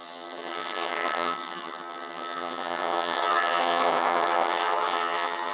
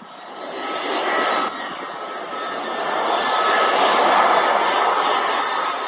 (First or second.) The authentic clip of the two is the second